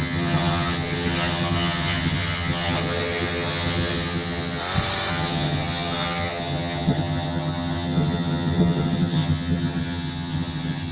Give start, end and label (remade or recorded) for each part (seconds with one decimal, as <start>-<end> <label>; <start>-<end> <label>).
0.0-4.6 remade; 4.6-5.1 recorded; 5.1-10.9 remade